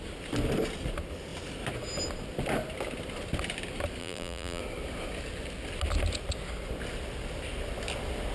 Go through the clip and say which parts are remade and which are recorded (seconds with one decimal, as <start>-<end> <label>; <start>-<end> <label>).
0.0-4.0 recorded; 4.0-4.6 remade; 4.6-8.3 recorded